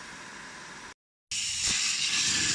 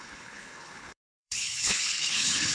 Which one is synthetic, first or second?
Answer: second